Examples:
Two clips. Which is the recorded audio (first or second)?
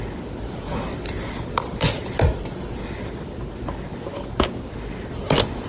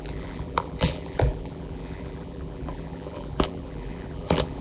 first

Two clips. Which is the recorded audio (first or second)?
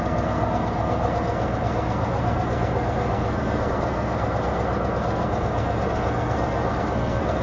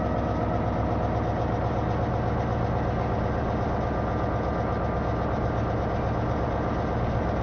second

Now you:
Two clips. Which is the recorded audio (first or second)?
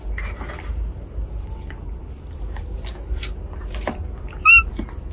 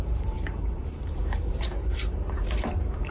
first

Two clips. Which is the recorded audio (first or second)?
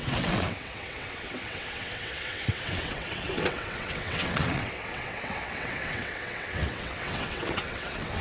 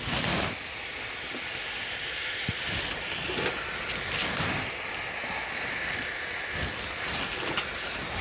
second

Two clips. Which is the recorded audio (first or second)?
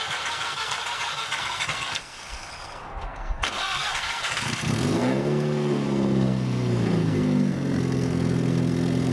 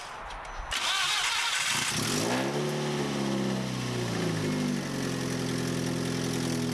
second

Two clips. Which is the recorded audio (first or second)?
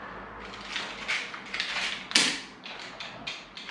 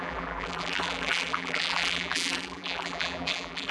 first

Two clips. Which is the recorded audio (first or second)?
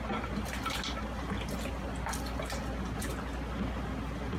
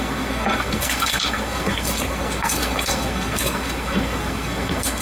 first